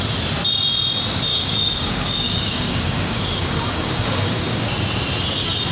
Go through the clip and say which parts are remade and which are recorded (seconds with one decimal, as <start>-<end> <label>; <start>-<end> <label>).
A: 0.0-1.3 recorded; 1.3-4.7 remade; 4.7-5.7 recorded